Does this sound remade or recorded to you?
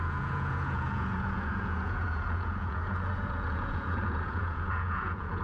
remade